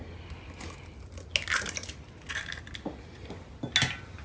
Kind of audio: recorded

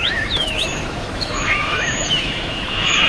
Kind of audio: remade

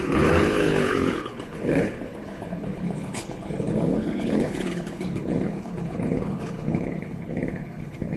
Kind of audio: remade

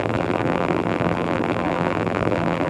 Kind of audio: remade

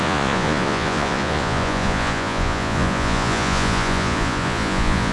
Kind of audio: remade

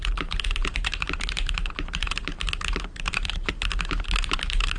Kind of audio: remade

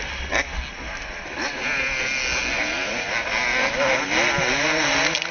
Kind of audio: recorded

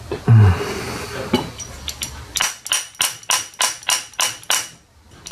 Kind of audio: recorded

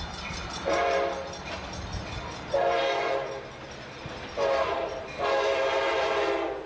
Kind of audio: remade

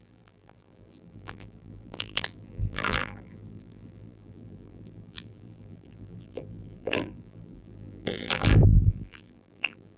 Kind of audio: remade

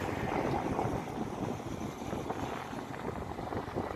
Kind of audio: recorded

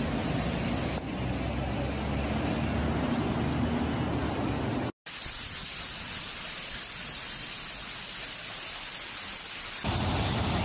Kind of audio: recorded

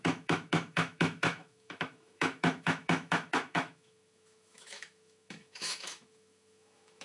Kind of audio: remade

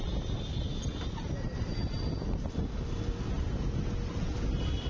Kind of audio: recorded